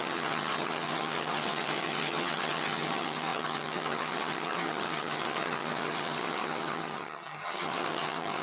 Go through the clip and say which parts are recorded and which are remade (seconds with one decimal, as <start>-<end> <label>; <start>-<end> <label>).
0.0-8.4 remade